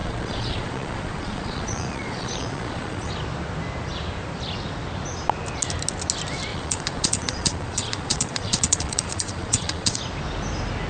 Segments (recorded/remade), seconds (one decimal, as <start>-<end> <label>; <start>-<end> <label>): 0.0-3.1 remade; 3.1-6.5 recorded; 6.5-10.0 remade; 10.0-10.9 recorded